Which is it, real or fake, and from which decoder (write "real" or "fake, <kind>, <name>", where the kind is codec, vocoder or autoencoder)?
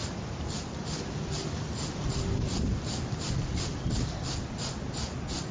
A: real